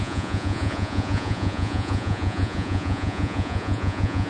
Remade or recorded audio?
remade